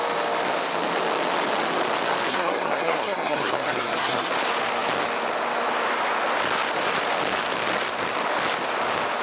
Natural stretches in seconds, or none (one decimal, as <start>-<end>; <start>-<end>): 0.0-2.3; 4.3-9.2